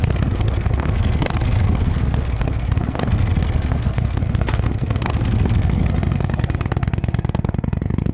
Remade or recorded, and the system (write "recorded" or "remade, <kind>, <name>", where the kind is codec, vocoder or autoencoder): remade, codec, SNAC